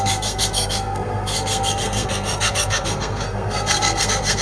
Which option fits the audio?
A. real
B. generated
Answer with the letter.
B